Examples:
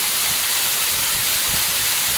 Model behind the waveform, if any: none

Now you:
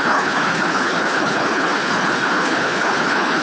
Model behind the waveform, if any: codec, HILCodec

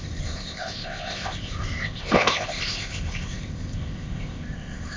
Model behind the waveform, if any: codec, ZipCodec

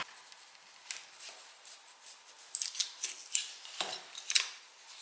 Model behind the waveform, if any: none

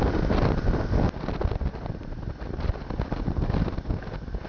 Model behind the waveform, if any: none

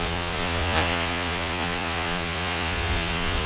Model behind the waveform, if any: vocoder, Vocos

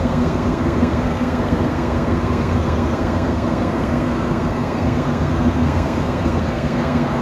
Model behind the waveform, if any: codec, SNAC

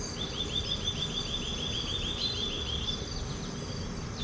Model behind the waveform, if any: none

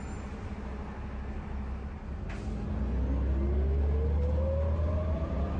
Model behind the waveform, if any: none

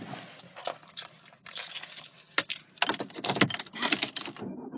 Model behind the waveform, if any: none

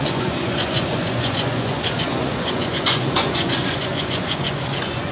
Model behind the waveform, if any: vocoder, Vocos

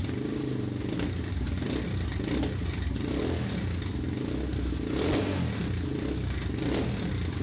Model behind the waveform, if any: none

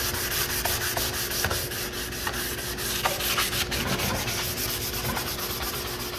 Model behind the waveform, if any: none